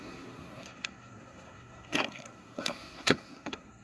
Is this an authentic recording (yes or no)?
no